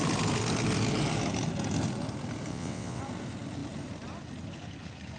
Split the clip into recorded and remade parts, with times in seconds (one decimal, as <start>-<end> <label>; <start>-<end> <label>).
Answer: 0.0-2.5 recorded; 2.5-3.0 remade; 3.0-5.2 recorded